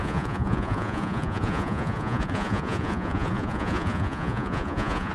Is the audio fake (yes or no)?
yes